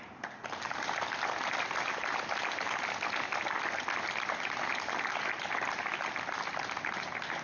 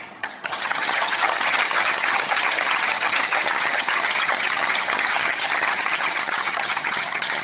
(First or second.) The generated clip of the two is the second